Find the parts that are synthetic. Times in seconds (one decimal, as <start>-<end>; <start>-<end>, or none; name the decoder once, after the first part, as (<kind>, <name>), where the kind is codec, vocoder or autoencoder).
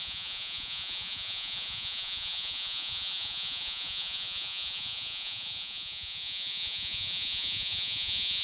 0.0-8.4 (vocoder, Vocos)